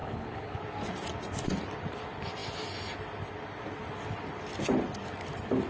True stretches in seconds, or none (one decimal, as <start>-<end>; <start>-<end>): 0.6-5.7